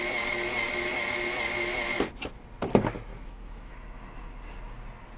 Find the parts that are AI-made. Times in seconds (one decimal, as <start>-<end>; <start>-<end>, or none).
3.1-4.3